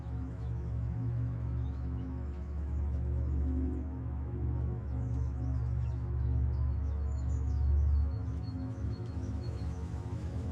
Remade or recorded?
remade